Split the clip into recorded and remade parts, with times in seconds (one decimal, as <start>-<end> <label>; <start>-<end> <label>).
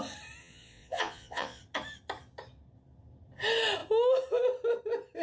0.0-0.4 recorded; 0.4-1.6 remade; 1.6-5.2 recorded